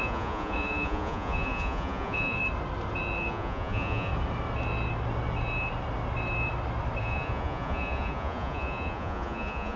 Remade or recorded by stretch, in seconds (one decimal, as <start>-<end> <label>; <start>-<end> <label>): 0.0-2.4 remade; 2.4-3.3 recorded; 3.3-4.1 remade; 4.1-7.0 recorded; 7.0-9.8 remade